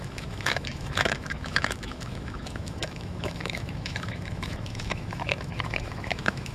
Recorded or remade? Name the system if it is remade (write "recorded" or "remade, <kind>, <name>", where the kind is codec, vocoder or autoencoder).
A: remade, autoencoder, DAC-VAE